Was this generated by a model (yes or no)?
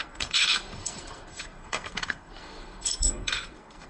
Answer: yes